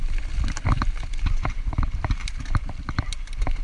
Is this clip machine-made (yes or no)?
yes